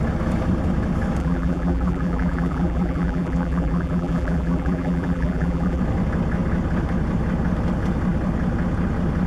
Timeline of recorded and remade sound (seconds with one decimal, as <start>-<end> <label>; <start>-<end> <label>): 0.0-1.2 recorded; 1.2-5.8 remade; 5.8-9.3 recorded